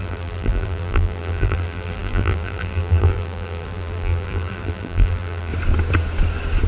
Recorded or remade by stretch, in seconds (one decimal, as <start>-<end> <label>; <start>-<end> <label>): 0.0-5.5 remade; 5.5-6.7 recorded